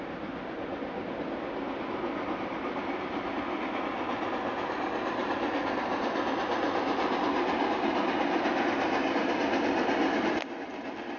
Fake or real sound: real